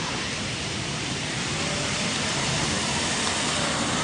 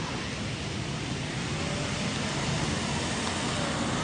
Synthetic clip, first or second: first